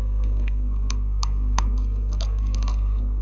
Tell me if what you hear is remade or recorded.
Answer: remade